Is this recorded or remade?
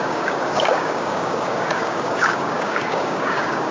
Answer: remade